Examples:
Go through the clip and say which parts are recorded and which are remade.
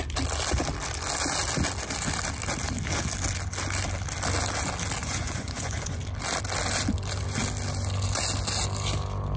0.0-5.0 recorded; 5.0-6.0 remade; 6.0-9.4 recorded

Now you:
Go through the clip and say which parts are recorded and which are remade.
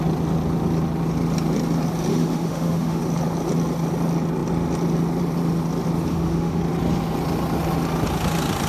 0.0-2.1 recorded; 2.1-3.0 remade; 3.0-6.1 recorded; 6.1-6.6 remade; 6.6-8.7 recorded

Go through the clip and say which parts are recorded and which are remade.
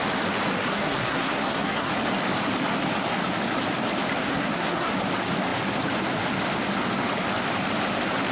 0.0-0.7 recorded; 0.7-1.9 remade; 1.9-4.3 recorded; 4.3-4.9 remade; 4.9-8.3 recorded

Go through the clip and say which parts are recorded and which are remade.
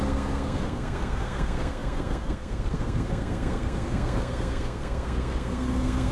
0.0-6.1 remade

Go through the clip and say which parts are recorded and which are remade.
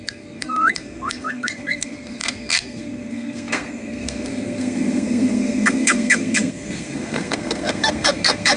0.0-8.6 remade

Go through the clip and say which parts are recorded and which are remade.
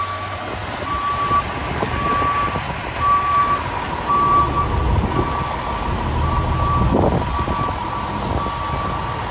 0.0-1.6 recorded; 1.6-2.1 remade; 2.1-9.3 recorded